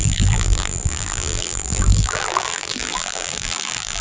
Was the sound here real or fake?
fake